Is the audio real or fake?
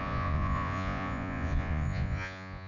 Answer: fake